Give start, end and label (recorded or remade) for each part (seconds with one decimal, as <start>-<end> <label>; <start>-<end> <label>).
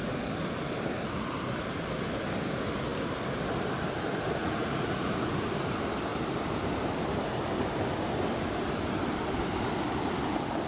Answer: 0.0-4.4 recorded; 4.4-5.5 remade; 5.5-10.7 recorded